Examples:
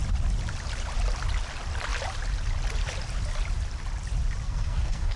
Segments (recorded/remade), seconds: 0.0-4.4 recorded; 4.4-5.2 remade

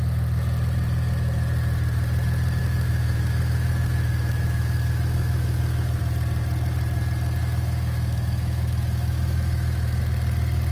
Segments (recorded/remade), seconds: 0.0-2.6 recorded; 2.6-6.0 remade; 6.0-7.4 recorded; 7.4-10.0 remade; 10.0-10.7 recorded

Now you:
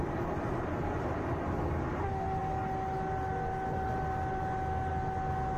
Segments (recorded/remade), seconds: 0.0-5.6 recorded